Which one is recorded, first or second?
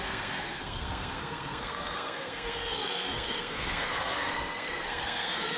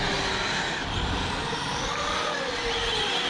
second